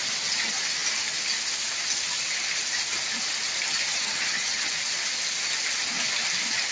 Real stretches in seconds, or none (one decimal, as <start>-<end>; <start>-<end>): 0.0-3.9; 4.7-6.7